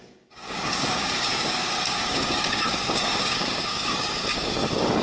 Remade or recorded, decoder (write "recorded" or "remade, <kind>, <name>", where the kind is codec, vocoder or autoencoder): remade, codec, DAC